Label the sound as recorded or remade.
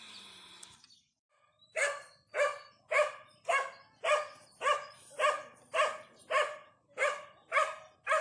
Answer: recorded